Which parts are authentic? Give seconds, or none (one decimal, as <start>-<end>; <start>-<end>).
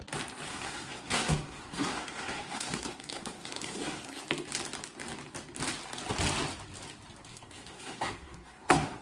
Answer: 0.0-0.5; 4.2-7.3